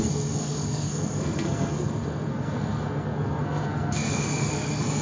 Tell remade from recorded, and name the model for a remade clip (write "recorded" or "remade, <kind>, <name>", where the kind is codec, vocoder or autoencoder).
remade, codec, SNAC